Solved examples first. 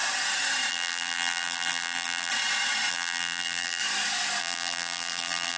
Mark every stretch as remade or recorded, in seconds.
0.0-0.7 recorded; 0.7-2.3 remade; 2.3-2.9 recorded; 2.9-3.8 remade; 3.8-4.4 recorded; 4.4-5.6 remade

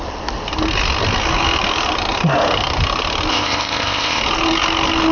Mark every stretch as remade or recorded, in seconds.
0.0-3.3 recorded; 3.3-4.2 remade; 4.2-5.1 recorded